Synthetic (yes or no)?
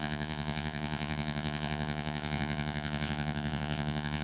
yes